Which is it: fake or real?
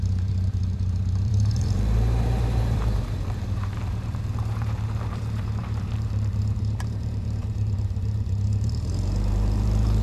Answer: fake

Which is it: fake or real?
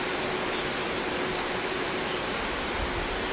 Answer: fake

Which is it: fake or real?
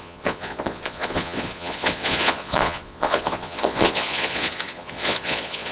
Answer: fake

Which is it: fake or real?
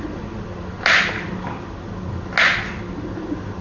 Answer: real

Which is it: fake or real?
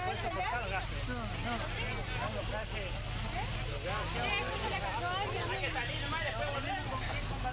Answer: real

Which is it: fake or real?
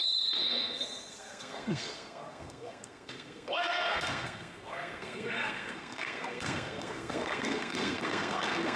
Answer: fake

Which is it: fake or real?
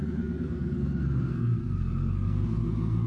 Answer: fake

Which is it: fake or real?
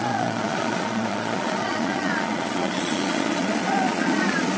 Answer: fake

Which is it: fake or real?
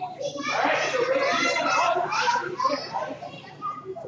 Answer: fake